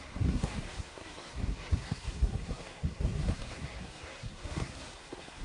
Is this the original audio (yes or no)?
no